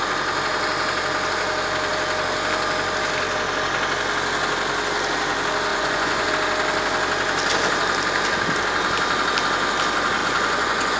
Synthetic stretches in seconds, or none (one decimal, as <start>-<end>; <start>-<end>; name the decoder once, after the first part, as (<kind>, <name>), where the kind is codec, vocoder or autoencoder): 5.7-6.3 (vocoder, Vocos); 10.2-11.0